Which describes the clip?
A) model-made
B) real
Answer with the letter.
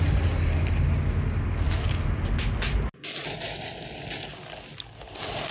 B